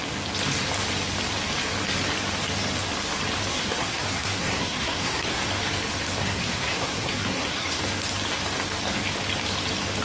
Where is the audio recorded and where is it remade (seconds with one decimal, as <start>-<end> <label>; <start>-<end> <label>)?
0.0-3.5 recorded; 3.5-5.4 remade; 5.4-6.2 recorded; 6.2-7.8 remade; 7.8-10.0 recorded